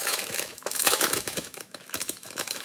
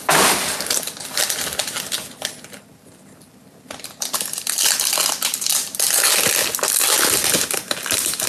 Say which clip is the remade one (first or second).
first